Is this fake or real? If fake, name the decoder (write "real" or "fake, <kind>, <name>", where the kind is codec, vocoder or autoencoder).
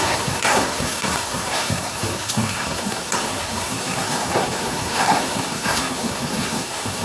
fake, codec, SNAC